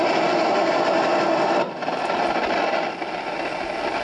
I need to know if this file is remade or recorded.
recorded